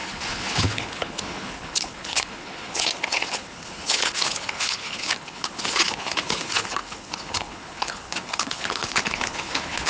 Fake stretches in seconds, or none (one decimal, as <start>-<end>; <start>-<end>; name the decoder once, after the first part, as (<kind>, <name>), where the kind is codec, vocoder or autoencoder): 0.0-9.9 (codec, HILCodec)